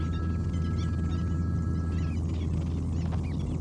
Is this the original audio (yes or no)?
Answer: yes